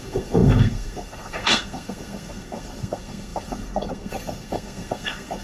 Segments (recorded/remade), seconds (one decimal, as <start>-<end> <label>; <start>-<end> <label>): 0.0-5.4 remade